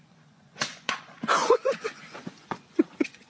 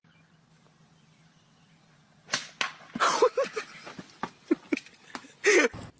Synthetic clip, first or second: first